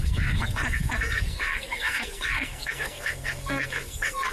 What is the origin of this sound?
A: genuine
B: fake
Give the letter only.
B